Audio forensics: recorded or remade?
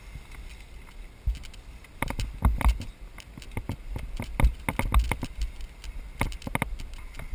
recorded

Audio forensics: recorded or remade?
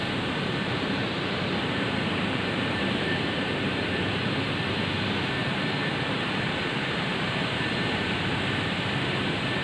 remade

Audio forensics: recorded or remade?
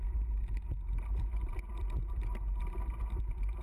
recorded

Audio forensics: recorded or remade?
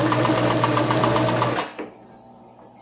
recorded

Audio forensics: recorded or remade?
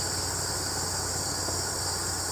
recorded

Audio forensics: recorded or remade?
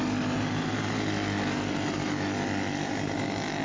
recorded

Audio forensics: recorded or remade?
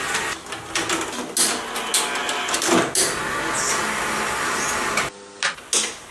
recorded